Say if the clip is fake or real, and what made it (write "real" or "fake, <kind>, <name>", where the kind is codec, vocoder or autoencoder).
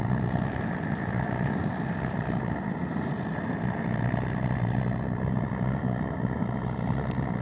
real